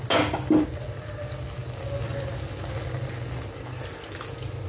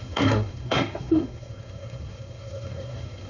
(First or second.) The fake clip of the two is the second